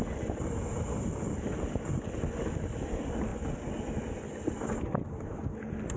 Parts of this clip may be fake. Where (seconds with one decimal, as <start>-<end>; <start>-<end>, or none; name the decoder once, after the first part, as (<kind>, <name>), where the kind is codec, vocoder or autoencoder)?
none